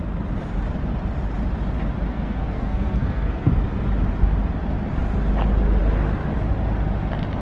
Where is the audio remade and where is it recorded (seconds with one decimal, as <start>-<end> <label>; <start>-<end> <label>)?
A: 0.0-2.1 recorded; 2.1-3.5 remade; 3.5-7.4 recorded